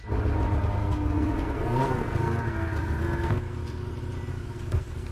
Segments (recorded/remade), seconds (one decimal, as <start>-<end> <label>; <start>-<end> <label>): 0.0-0.8 recorded; 0.8-3.9 remade; 3.9-4.3 recorded; 4.3-5.1 remade